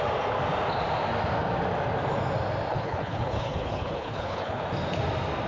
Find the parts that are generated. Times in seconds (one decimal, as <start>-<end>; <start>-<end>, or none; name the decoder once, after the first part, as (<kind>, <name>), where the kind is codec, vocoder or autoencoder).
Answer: 2.7-4.6 (codec, HILCodec)